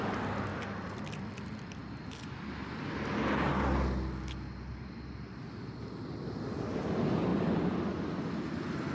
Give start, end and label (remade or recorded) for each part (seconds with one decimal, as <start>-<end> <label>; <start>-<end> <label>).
0.0-0.5 recorded; 0.5-1.4 remade; 1.4-7.3 recorded; 7.3-8.0 remade; 8.0-8.9 recorded